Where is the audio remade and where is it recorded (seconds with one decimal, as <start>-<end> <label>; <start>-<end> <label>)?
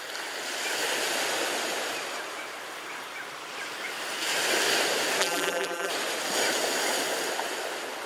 0.0-5.2 recorded; 5.2-5.9 remade; 5.9-8.1 recorded